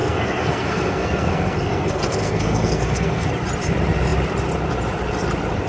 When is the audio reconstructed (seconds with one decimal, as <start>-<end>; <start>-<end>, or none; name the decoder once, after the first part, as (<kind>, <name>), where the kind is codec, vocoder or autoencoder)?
0.0-3.3 (codec, SNAC)